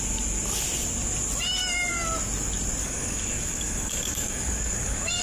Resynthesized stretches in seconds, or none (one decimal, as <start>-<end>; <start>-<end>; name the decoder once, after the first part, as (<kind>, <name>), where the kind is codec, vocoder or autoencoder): 2.8-5.2 (codec, DAC)